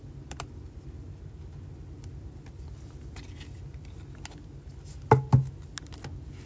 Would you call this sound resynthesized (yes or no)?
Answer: no